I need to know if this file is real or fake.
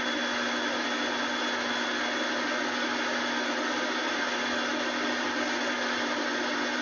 real